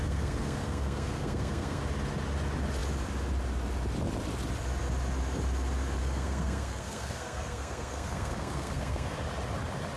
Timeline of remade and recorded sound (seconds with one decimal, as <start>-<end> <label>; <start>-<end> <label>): 0.0-1.8 remade; 1.8-6.0 recorded; 6.0-9.2 remade; 9.2-10.0 recorded